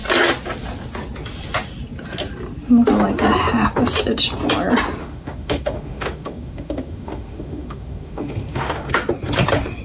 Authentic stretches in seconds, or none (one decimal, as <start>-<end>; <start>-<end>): 0.0-5.0; 8.9-9.8